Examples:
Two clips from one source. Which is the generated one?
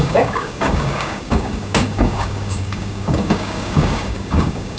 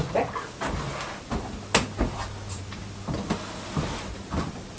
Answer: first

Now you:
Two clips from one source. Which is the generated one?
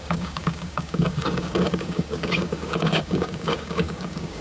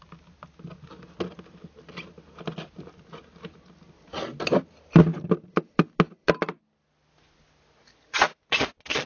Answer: first